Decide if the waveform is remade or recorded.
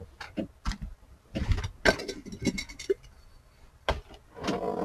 recorded